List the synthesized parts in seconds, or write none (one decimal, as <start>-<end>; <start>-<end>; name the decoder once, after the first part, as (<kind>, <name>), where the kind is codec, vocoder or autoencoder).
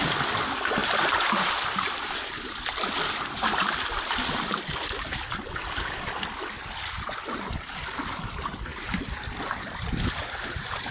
0.0-8.7 (vocoder, BigVGAN v2); 9.4-10.9